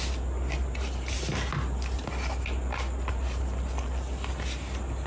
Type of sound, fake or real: real